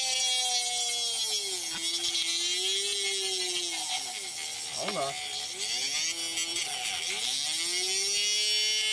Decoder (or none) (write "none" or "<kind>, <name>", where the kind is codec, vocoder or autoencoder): none